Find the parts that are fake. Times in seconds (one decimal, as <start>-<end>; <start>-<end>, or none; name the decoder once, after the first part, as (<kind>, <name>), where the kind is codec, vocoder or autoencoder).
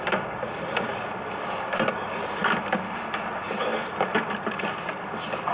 0.9-1.9 (vocoder, BigVGAN v2)